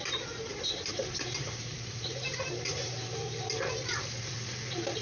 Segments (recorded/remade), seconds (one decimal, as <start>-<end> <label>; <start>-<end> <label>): 0.0-0.5 recorded; 0.5-3.5 remade; 3.5-5.0 recorded